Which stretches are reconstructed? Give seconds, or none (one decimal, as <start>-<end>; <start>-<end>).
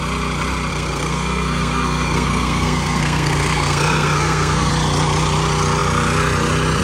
0.7-4.7